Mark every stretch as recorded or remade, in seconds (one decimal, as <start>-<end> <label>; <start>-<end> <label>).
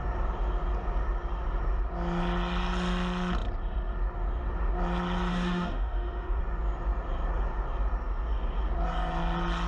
0.0-5.3 recorded; 5.3-6.4 remade; 6.4-9.7 recorded